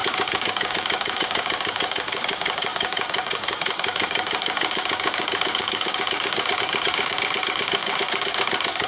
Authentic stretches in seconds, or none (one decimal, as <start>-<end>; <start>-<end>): none